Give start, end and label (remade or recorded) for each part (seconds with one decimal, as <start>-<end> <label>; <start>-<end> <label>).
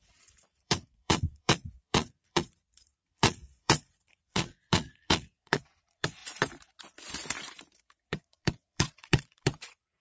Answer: 0.0-6.2 remade; 6.2-8.1 recorded; 8.1-10.0 remade